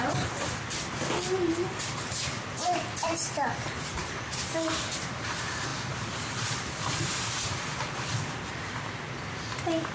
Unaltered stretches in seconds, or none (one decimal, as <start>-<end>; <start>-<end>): none